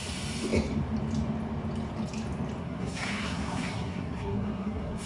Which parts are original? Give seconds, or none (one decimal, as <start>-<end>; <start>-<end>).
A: 0.0-2.6